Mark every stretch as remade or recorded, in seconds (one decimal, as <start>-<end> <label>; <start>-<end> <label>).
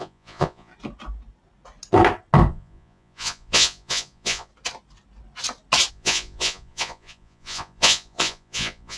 0.0-0.7 remade; 0.7-2.5 recorded; 2.5-4.5 remade; 4.5-5.9 recorded; 5.9-9.0 remade